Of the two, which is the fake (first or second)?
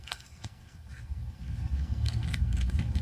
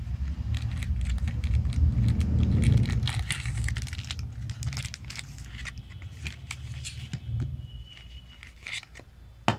first